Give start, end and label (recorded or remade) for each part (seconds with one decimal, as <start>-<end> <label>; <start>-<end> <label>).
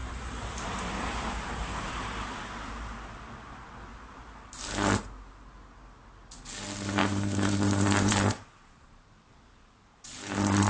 0.0-2.9 remade; 2.9-3.9 recorded; 3.9-5.6 remade; 5.6-7.0 recorded; 7.0-10.7 remade